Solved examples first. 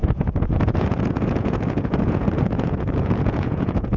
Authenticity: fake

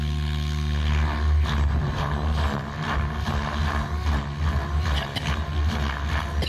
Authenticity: real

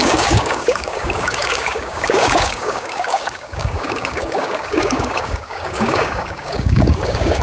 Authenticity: fake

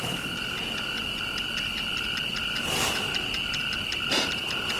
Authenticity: real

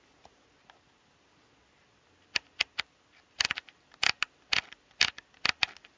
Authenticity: real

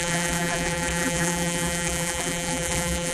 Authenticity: fake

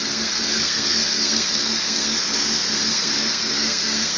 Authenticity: fake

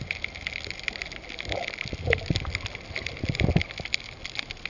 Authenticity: real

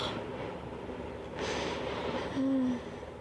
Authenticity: fake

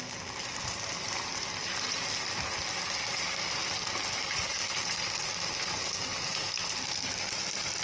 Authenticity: real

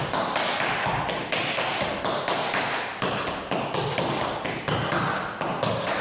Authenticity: real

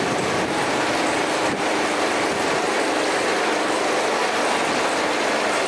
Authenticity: real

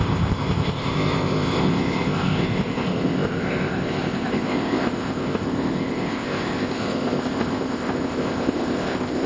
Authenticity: fake